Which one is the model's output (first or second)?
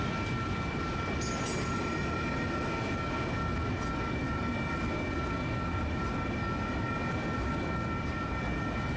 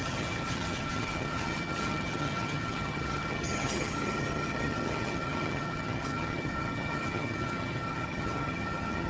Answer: second